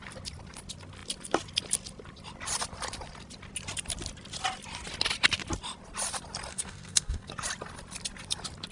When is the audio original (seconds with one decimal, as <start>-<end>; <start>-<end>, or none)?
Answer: 0.0-6.5; 7.3-8.7